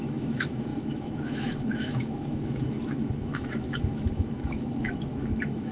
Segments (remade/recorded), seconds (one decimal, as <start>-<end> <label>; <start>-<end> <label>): 0.0-5.7 remade